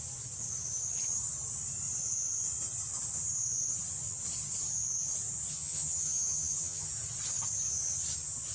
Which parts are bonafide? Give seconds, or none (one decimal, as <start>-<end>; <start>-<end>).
0.0-5.5; 6.9-8.5